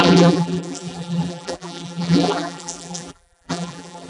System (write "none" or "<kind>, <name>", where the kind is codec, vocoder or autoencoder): vocoder, BigVGAN v2